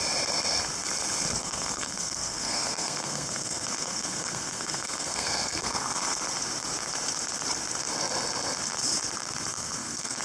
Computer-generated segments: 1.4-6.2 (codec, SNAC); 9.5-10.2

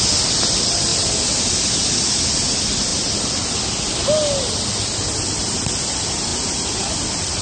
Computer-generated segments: none

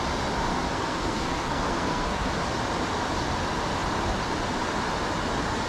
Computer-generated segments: 0.5-2.3 (codec, SNAC)

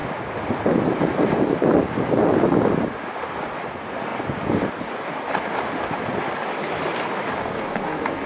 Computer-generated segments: 7.4-8.3 (codec, SNAC)

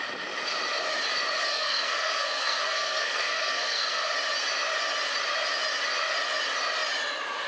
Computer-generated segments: 1.5-4.1 (codec, SNAC)